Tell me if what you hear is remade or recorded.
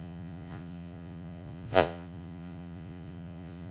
remade